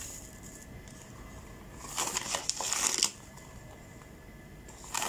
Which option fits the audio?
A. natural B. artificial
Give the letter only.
A